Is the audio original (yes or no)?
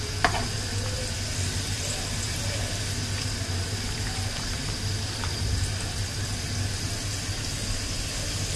yes